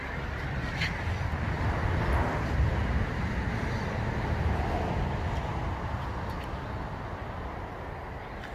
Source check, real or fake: real